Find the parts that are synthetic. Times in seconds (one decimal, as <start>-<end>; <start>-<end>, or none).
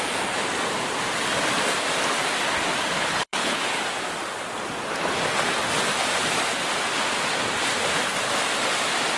3.0-3.6